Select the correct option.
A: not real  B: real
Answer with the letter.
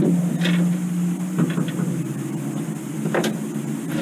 B